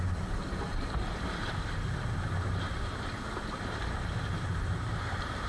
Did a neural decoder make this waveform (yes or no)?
yes